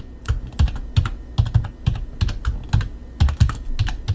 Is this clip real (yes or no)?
yes